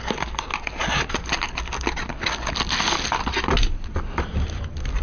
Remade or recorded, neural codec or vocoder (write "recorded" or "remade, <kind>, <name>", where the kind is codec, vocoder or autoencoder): recorded